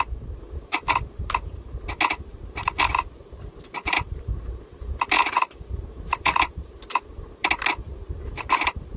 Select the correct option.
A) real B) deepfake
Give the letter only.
B